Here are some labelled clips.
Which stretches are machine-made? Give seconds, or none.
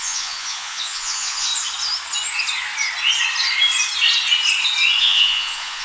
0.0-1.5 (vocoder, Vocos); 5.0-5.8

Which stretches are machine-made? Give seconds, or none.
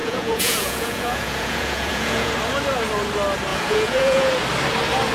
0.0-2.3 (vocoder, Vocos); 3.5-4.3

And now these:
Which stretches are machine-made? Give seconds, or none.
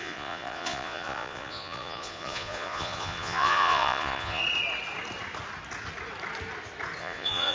0.0-4.4 (vocoder, Vocos); 7.0-7.5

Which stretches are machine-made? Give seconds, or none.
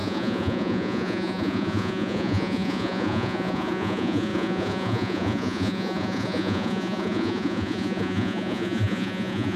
0.0-9.6 (vocoder, Vocos)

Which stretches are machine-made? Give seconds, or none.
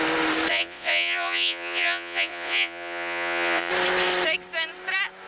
0.5-3.7 (vocoder, Vocos)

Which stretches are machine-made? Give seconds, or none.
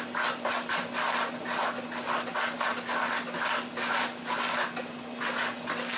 none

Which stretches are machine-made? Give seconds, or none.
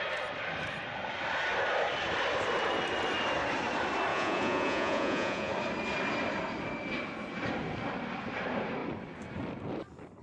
4.1-5.5 (vocoder, Vocos)